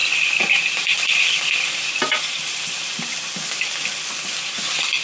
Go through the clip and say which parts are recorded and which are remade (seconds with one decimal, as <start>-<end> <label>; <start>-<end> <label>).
0.0-1.4 remade; 1.4-5.0 recorded